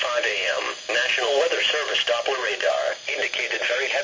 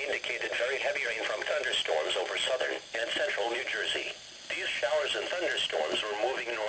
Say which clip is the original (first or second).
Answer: second